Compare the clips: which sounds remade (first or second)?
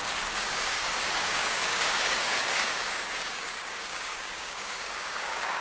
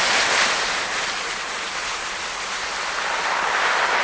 first